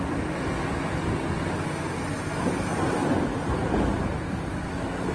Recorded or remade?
recorded